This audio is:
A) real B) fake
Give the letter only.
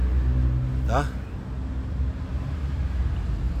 A